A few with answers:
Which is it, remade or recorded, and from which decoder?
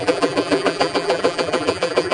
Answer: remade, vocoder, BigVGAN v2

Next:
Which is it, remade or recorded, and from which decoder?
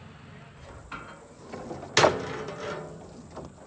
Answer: recorded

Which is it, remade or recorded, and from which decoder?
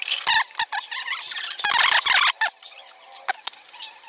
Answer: recorded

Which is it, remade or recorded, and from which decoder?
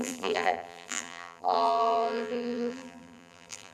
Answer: remade, vocoder, BigVGAN v2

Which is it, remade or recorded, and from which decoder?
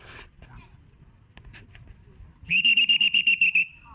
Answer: remade, vocoder, BigVGAN v2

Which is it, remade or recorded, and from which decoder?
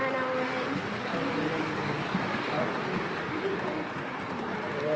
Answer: recorded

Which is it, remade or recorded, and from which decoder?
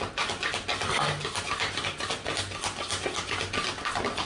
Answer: recorded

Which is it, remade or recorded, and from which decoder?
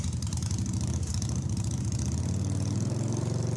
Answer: remade, vocoder, BigVGAN v2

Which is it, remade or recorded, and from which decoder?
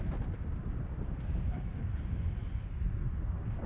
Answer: remade, vocoder, BigVGAN v2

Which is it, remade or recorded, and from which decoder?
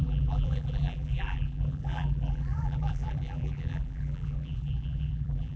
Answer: remade, vocoder, BigVGAN v2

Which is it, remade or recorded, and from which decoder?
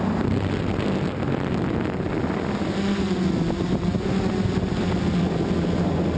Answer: recorded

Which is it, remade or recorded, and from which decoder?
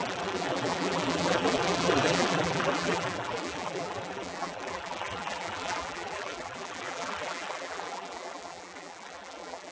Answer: remade, vocoder, BigVGAN v2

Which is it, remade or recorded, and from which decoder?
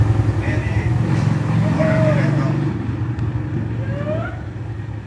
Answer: recorded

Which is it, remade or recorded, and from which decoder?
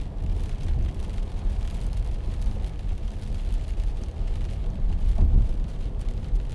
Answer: remade, vocoder, BigVGAN v2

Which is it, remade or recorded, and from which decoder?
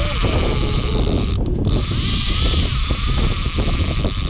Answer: remade, vocoder, BigVGAN v2